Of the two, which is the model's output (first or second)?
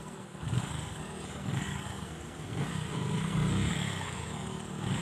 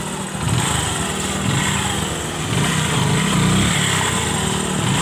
first